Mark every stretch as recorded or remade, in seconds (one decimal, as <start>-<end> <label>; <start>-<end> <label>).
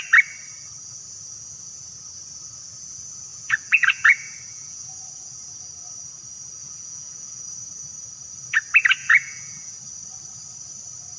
0.0-3.3 recorded; 3.3-4.9 remade; 4.9-6.6 recorded; 6.6-7.4 remade; 7.4-9.0 recorded; 9.0-9.8 remade; 9.8-11.2 recorded